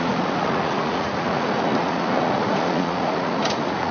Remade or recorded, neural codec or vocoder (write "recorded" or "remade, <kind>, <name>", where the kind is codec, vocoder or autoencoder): remade, vocoder, Vocos